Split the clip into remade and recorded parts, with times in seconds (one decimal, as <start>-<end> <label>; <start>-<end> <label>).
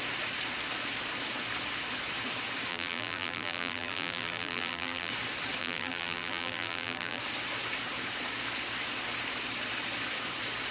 0.0-2.7 recorded; 2.7-5.1 remade; 5.1-5.6 recorded; 5.6-7.2 remade; 7.2-10.7 recorded